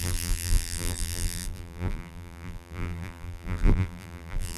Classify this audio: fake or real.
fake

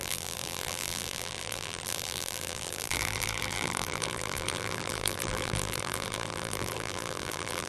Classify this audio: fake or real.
fake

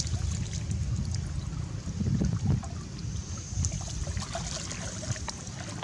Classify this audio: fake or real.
real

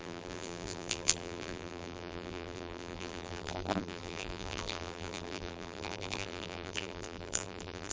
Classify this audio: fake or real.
fake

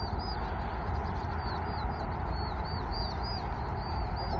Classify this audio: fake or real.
real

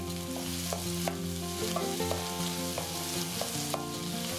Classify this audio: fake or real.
real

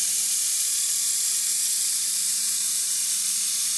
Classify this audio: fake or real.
fake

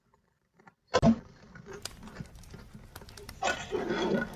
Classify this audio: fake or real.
real